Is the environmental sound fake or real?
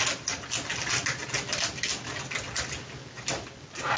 real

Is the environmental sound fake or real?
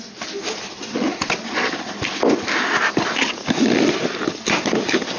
real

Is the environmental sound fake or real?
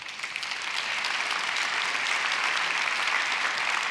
real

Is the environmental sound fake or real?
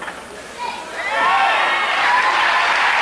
real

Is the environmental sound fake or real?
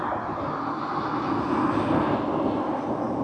real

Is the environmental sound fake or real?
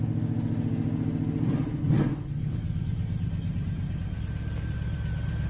real